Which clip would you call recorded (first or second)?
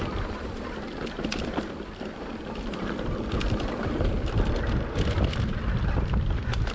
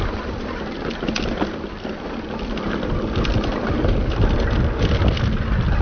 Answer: second